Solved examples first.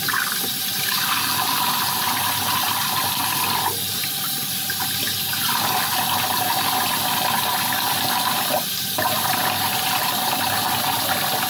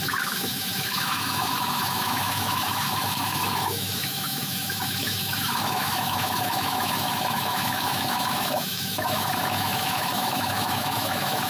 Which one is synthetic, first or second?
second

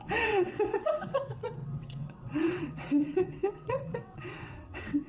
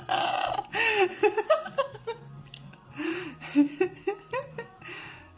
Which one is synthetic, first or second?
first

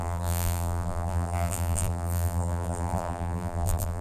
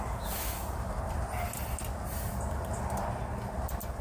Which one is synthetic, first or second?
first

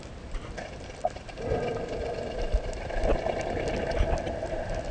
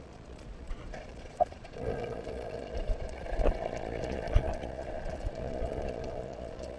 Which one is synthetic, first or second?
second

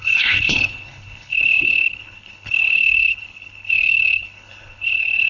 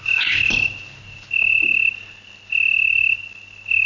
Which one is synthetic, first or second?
first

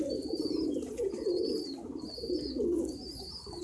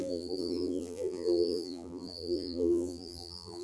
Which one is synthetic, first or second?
second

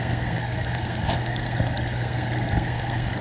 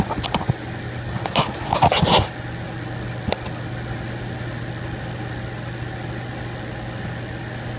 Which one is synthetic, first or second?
first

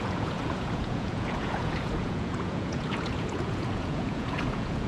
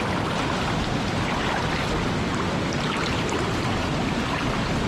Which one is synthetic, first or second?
first